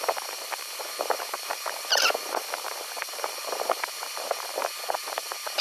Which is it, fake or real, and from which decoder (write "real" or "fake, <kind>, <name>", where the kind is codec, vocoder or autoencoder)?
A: fake, vocoder, BigVGAN v2